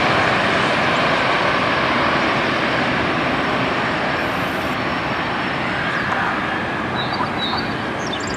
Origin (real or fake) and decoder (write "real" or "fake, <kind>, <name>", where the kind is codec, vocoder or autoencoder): real